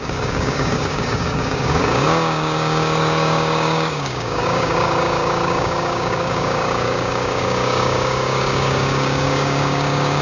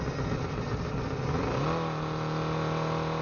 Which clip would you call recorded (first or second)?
second